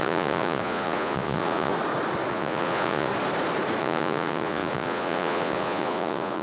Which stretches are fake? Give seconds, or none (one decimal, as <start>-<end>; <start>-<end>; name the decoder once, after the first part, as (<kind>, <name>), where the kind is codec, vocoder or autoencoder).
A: 0.0-1.7 (vocoder, Vocos); 2.3-3.1; 3.8-6.4